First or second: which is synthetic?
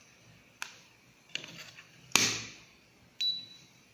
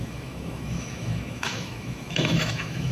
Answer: second